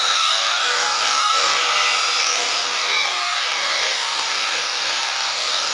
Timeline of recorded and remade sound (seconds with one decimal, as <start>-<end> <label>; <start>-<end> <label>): 0.0-1.6 remade; 1.6-2.2 recorded; 2.2-5.7 remade